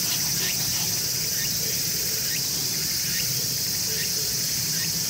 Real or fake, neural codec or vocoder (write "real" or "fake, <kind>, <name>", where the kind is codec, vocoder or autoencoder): real